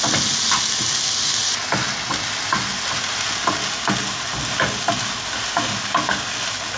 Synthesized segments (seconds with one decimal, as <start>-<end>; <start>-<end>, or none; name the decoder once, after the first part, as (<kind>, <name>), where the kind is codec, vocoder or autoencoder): none